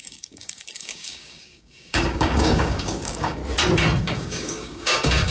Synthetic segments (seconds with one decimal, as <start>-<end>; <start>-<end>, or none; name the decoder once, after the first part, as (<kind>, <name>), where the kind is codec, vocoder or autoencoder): 0.0-3.4 (codec, DAC); 4.0-5.3